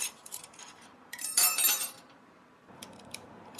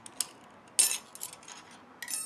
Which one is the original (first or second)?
second